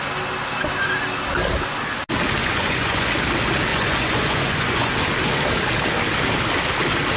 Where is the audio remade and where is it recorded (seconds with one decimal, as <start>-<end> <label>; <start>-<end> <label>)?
0.0-2.4 recorded; 2.4-3.1 remade; 3.1-3.7 recorded; 3.7-4.9 remade; 4.9-7.2 recorded